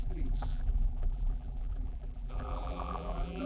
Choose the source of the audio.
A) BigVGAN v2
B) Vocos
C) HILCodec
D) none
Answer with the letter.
A